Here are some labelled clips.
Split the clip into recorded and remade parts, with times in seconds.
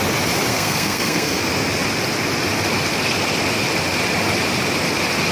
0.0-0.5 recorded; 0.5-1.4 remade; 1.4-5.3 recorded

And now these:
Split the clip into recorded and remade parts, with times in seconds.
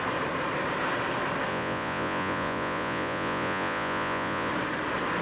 0.0-1.5 recorded; 1.5-4.5 remade; 4.5-5.2 recorded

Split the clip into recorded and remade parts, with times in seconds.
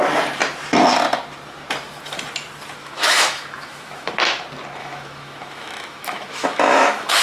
0.0-2.8 recorded; 2.8-4.1 remade; 4.1-4.8 recorded; 4.8-7.2 remade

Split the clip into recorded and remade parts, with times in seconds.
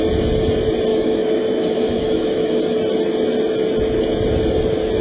0.0-0.9 recorded; 0.9-2.6 remade; 2.6-5.0 recorded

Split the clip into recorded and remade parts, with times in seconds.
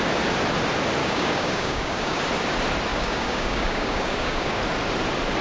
0.0-1.0 recorded; 1.0-2.2 remade; 2.2-2.9 recorded; 2.9-4.6 remade; 4.6-5.4 recorded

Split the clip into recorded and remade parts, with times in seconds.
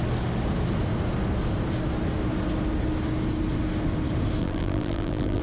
0.0-4.4 recorded; 4.4-5.4 remade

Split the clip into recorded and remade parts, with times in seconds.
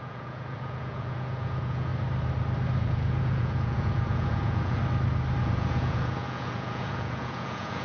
0.0-1.9 remade; 1.9-2.8 recorded; 2.8-4.8 remade; 4.8-5.4 recorded; 5.4-7.8 remade